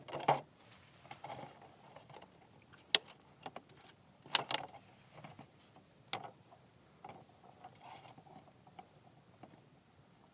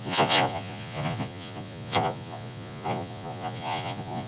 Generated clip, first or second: second